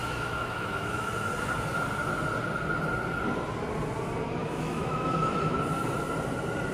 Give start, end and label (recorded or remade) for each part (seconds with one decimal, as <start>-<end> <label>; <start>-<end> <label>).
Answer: 0.0-1.1 remade; 1.1-4.4 recorded; 4.4-5.6 remade; 5.6-6.7 recorded